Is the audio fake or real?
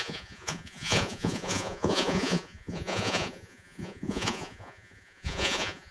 fake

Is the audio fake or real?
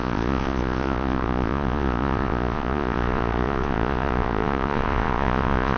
fake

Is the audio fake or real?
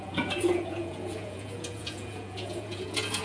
fake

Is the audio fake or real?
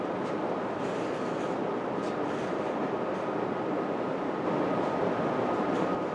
real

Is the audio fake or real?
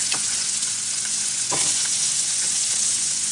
fake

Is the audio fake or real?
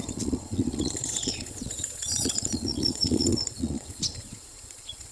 fake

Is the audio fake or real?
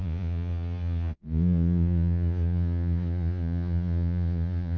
fake